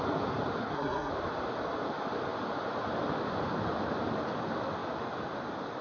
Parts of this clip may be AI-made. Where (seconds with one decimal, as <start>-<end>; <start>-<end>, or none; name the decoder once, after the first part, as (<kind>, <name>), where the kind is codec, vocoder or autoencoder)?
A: 0.6-1.1 (codec, SNAC)